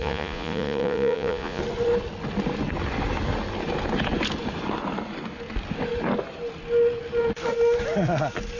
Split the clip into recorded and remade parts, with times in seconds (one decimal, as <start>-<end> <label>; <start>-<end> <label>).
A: 0.0-1.6 remade; 1.6-8.6 recorded